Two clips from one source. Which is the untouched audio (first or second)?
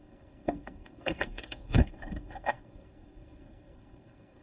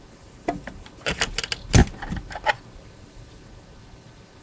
second